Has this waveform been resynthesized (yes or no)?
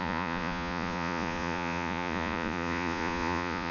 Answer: yes